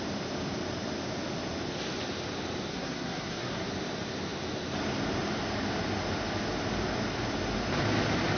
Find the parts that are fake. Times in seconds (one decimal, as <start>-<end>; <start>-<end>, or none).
2.7-3.7